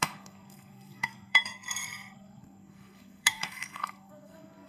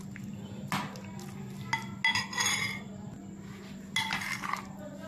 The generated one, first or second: first